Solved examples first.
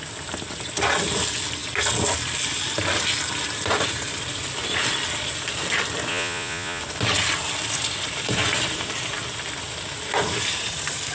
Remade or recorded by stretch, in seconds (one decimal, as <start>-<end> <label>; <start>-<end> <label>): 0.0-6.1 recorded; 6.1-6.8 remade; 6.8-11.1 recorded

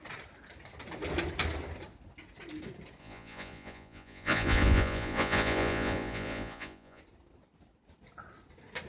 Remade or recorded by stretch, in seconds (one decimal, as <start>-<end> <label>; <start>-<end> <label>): 0.0-3.0 recorded; 3.0-7.0 remade; 7.0-8.9 recorded

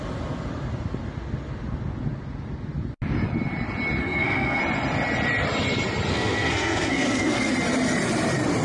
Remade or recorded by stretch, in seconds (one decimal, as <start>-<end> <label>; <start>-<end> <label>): 0.0-4.0 recorded; 4.0-4.6 remade; 4.6-6.1 recorded; 6.1-7.5 remade; 7.5-8.6 recorded

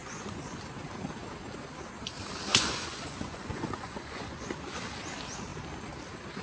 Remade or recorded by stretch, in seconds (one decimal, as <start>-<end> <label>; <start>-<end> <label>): 0.0-0.6 remade; 0.6-2.5 recorded; 2.5-4.5 remade; 4.5-6.4 recorded

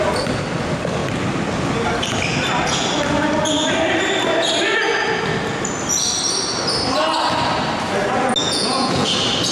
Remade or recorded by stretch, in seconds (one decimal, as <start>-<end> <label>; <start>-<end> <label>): 0.0-8.4 recorded; 8.4-9.1 remade; 9.1-9.5 recorded

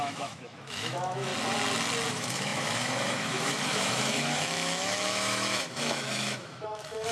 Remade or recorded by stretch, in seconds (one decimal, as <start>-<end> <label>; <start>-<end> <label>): 0.0-1.3 remade; 1.3-2.1 recorded; 2.1-7.1 remade